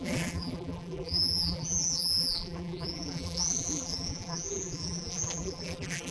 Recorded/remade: remade